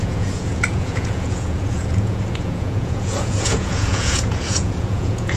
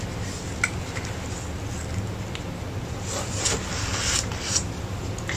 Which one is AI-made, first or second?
first